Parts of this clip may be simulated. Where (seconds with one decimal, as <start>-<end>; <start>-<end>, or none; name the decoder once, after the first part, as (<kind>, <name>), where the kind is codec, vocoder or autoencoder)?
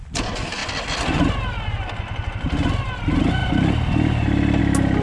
none